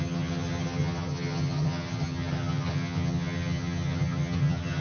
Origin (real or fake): fake